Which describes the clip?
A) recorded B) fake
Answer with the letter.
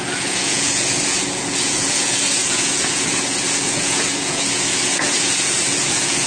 B